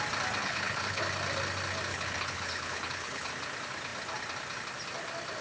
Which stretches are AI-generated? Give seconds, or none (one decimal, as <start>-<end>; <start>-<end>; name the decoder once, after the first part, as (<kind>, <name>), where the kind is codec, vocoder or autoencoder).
0.4-1.0 (codec, HILCodec); 1.9-3.3

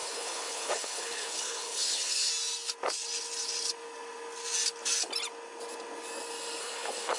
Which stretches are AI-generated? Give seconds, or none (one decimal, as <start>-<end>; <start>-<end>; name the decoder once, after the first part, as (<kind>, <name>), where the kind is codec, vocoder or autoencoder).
0.0-2.3 (codec, HILCodec); 6.6-7.2

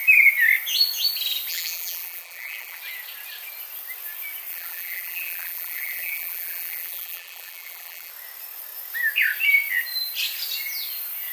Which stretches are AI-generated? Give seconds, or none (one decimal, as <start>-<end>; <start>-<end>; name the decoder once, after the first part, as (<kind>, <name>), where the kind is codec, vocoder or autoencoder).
1.5-2.8 (vocoder, BigVGAN v2); 4.5-8.1